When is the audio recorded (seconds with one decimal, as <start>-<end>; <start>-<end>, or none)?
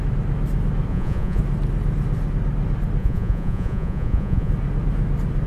0.0-0.9; 1.4-3.0; 4.5-5.5